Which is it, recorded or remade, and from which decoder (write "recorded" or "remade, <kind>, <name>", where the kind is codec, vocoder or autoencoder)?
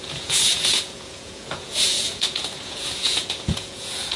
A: remade, vocoder, Vocos